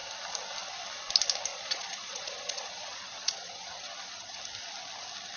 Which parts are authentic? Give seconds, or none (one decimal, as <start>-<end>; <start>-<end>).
0.0-1.5; 4.4-5.4